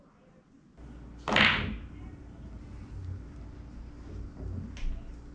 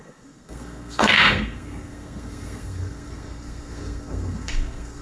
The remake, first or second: second